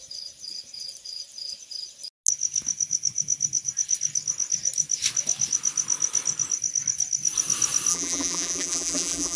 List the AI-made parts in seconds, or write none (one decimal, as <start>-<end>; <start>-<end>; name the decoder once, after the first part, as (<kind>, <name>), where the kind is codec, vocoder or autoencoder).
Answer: 7.9-9.4 (vocoder, BigVGAN v2)